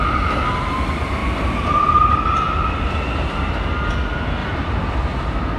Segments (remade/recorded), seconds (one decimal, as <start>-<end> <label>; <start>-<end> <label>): 0.0-1.2 recorded; 1.2-3.1 remade; 3.1-4.4 recorded; 4.4-4.9 remade; 4.9-5.6 recorded